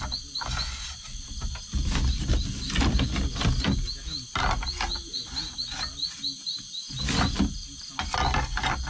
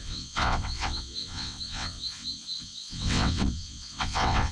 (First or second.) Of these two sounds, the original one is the first